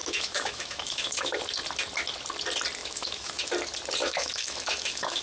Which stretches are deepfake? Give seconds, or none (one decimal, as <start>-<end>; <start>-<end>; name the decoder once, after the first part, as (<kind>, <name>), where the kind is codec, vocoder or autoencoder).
0.0-1.4 (autoencoder, DAC-VAE); 2.8-3.5; 4.0-5.2